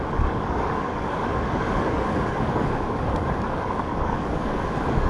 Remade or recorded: remade